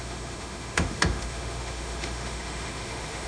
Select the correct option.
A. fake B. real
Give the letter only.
A